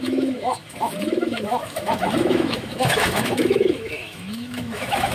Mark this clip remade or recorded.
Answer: remade